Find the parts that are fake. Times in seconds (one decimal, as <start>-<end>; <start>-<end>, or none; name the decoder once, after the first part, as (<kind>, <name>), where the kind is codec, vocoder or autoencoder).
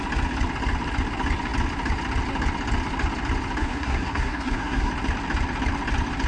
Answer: 3.6-4.9 (codec, SNAC)